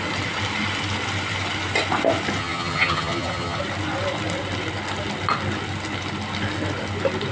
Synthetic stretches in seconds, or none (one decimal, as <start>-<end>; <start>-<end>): 2.4-3.6